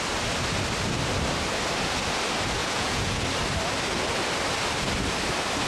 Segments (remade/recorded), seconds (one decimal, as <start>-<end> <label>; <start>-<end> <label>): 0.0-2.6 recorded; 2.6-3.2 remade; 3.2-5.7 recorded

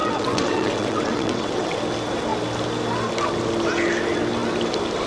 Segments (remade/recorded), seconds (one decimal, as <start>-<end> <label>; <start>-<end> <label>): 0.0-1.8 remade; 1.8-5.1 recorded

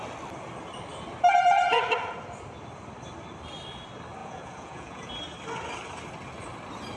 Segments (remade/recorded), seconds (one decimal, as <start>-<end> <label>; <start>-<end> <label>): 0.0-4.2 recorded; 4.2-5.1 remade; 5.1-7.0 recorded

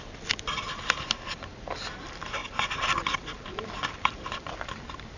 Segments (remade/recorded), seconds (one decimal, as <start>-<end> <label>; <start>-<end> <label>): 0.0-2.4 recorded; 2.4-4.8 remade; 4.8-5.2 recorded